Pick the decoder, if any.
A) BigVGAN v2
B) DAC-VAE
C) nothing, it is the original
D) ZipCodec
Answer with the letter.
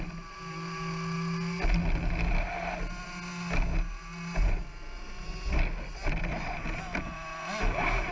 C